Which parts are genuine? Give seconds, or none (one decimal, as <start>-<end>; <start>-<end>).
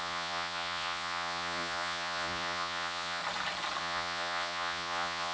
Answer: 3.2-3.8